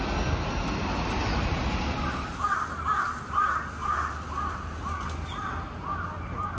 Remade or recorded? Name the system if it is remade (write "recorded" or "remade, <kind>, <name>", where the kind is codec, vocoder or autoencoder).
recorded